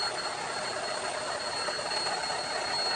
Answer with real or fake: real